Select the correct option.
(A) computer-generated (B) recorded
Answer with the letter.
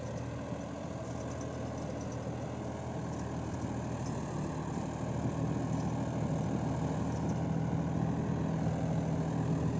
B